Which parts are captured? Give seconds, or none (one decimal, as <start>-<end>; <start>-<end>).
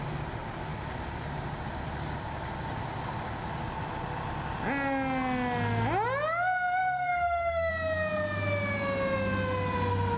0.0-6.8; 7.7-10.2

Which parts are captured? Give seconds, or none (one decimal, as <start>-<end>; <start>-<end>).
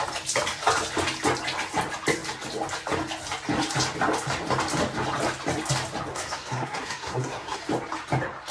0.0-6.1; 7.6-8.5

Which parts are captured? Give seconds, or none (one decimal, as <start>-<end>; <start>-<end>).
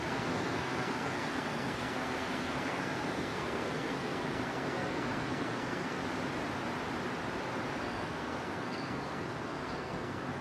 6.0-7.8